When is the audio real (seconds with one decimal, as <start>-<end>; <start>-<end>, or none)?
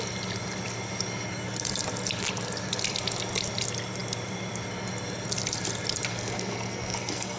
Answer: 0.0-6.1